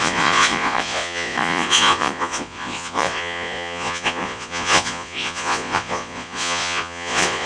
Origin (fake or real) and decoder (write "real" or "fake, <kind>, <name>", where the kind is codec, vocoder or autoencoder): fake, vocoder, Vocos